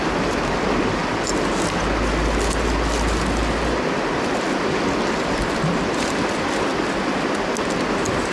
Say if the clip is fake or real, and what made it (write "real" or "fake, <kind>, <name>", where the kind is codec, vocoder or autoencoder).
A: real